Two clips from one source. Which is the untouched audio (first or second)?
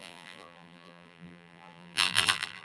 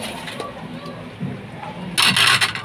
second